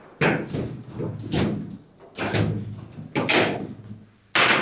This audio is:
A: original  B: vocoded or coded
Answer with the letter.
A